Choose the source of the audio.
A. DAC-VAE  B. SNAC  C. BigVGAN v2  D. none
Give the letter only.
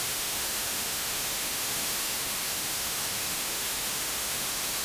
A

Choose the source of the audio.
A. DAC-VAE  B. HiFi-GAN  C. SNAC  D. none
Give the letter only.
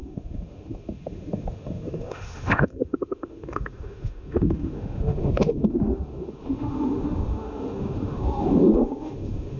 A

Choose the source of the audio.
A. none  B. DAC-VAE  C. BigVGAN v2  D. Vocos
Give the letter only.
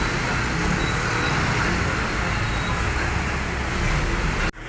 A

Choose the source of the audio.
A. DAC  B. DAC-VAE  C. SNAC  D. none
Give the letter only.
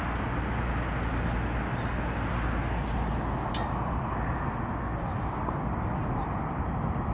D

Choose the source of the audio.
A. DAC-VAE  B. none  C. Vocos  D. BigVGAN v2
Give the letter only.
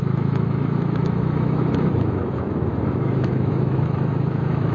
A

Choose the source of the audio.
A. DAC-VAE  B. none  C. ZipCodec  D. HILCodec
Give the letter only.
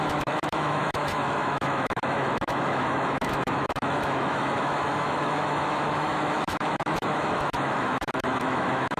A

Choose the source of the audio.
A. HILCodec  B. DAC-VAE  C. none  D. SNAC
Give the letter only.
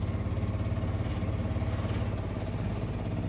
C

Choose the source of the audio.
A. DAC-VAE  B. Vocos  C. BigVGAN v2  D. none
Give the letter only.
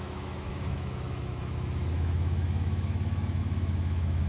A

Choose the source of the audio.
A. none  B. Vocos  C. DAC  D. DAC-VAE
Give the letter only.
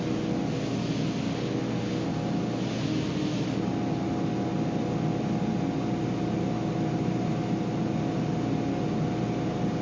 A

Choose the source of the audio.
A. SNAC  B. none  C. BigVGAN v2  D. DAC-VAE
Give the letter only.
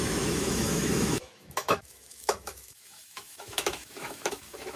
D